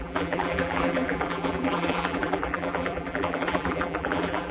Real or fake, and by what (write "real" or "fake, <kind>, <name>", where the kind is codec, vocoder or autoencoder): fake, vocoder, BigVGAN v2